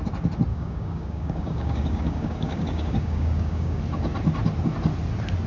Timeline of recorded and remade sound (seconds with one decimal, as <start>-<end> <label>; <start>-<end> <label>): 0.0-0.5 recorded; 0.5-3.8 remade; 3.8-5.5 recorded